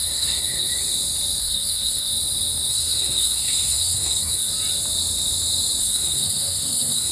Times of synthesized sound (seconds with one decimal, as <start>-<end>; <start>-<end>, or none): 0.0-0.7; 1.4-2.1; 2.7-4.5; 5.8-7.1